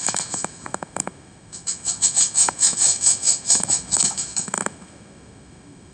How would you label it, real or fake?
fake